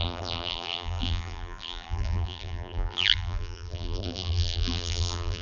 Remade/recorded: remade